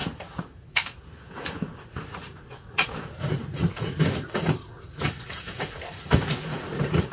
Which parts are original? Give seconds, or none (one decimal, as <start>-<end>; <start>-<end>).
none